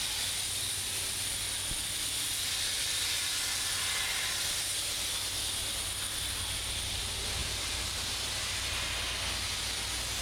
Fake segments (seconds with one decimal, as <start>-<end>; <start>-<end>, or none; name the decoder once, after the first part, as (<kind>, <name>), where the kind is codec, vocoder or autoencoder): none